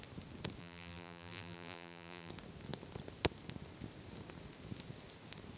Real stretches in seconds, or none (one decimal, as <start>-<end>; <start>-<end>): 0.0-0.6; 2.3-5.6